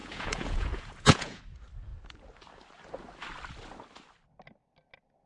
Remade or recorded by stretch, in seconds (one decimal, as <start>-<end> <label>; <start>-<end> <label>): 0.0-1.4 remade; 1.4-5.3 recorded